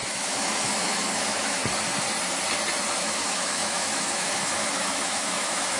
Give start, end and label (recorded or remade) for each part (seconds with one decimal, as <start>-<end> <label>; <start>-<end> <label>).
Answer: 0.0-1.6 remade; 1.6-3.0 recorded; 3.0-5.8 remade